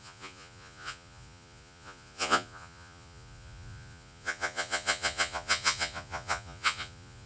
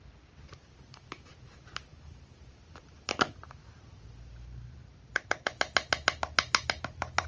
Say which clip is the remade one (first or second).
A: first